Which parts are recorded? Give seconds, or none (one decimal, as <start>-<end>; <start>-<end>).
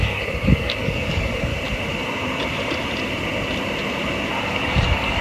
1.5-4.4